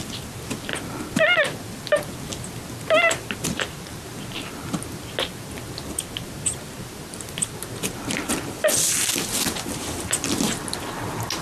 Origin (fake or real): real